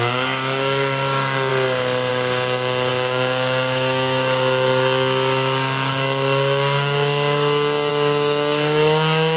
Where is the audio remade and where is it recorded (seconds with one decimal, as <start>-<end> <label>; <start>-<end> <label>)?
0.0-1.5 remade; 1.5-2.1 recorded; 2.1-9.4 remade